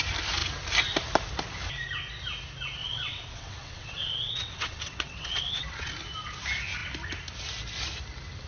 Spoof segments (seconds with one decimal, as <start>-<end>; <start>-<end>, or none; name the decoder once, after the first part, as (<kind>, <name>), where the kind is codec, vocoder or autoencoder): 2.8-5.9 (vocoder, WaveNeXt)